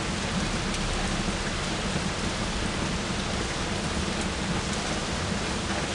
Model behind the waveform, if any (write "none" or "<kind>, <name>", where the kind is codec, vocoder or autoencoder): none